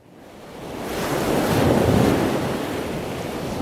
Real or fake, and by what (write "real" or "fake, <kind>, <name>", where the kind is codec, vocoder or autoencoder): real